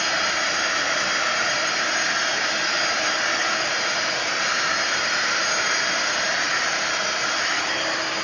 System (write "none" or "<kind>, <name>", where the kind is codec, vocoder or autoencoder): vocoder, BigVGAN v2